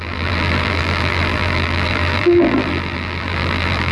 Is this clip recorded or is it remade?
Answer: remade